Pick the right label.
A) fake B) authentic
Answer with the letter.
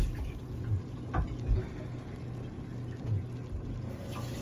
B